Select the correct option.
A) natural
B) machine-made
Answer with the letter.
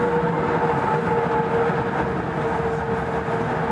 A